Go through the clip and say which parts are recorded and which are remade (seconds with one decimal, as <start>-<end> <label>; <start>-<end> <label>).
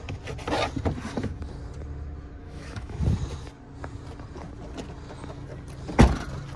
0.0-2.4 recorded; 2.4-3.0 remade; 3.0-6.6 recorded